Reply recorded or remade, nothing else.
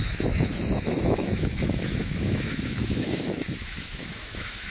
remade